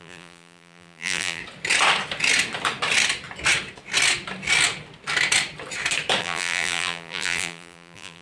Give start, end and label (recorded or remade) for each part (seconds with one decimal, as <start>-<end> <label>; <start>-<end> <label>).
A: 0.0-1.4 remade; 1.4-6.2 recorded; 6.2-8.2 remade